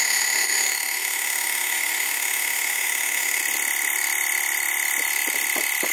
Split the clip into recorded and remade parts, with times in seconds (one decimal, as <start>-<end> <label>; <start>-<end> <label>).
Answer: 0.0-3.4 remade; 3.4-5.9 recorded